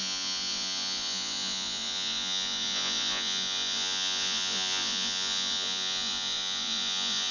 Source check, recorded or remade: remade